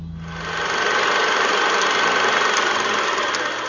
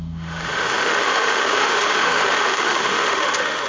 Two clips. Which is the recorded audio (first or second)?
first